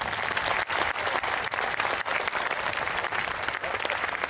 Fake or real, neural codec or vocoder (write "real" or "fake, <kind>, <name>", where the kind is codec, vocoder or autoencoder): real